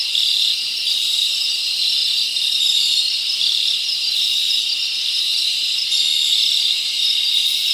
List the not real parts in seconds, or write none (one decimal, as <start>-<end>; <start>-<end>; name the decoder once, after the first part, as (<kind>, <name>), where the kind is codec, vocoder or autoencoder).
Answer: 2.0-3.8 (vocoder, BigVGAN v2); 5.3-5.9